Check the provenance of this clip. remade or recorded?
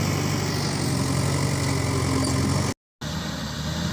recorded